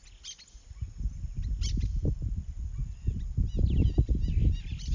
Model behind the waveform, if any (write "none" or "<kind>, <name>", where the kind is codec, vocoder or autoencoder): none